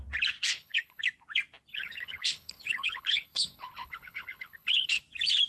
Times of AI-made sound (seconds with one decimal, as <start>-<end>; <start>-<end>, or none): 0.5-1.0; 1.7-5.0